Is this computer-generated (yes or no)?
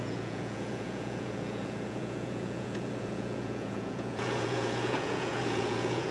yes